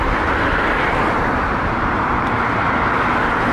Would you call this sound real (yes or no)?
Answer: yes